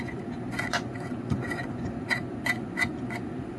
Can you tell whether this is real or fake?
fake